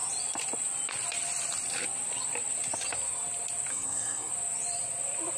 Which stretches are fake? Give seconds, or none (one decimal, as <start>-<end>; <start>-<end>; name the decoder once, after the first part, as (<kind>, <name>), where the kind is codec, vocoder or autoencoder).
3.7-4.3 (codec, SNAC)